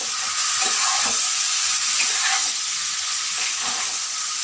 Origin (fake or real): fake